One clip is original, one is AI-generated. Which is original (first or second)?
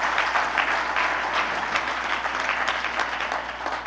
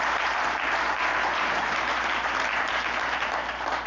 first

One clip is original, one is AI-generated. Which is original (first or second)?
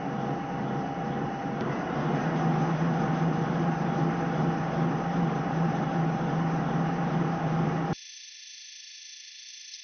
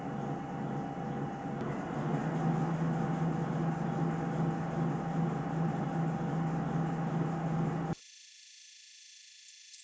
second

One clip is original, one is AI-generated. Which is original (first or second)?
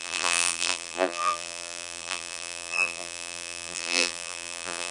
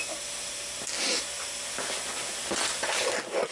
second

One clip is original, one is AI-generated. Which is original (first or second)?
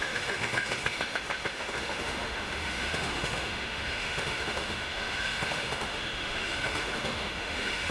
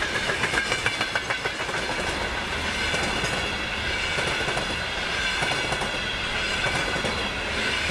second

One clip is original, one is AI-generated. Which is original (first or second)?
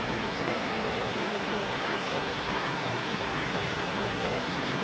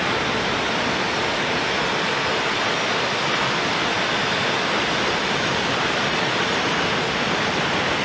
second